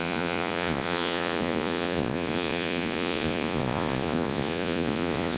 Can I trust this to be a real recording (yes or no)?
no